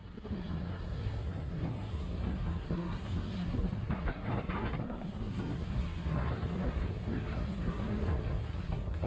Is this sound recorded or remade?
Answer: remade